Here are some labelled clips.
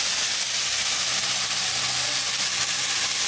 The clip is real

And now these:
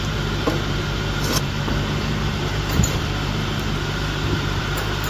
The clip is fake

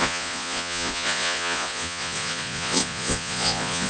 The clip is fake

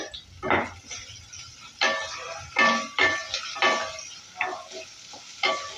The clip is real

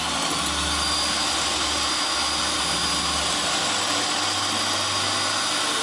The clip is real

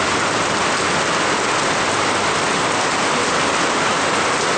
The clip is real